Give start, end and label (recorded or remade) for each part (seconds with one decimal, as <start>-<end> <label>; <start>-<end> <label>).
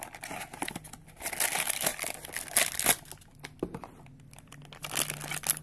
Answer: 0.0-5.6 recorded